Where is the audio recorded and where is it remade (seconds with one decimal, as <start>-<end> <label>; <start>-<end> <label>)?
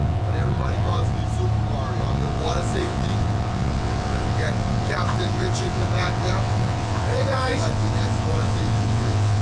0.0-1.2 remade; 1.2-2.0 recorded; 2.0-9.4 remade